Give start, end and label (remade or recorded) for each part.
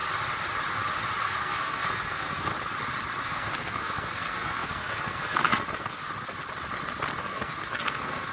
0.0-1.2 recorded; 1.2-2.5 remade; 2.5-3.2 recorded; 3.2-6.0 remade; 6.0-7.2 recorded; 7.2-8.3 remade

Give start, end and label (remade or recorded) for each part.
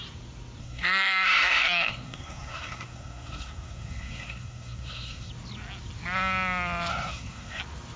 0.0-0.6 recorded; 0.6-5.3 remade; 5.3-6.9 recorded; 6.9-7.6 remade; 7.6-8.0 recorded